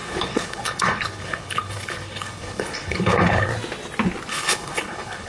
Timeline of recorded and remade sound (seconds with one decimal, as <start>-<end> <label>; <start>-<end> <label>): 0.0-3.5 remade; 3.5-4.3 recorded; 4.3-5.3 remade